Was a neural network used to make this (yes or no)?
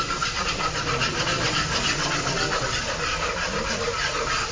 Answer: no